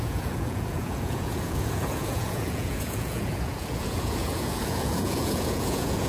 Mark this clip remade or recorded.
remade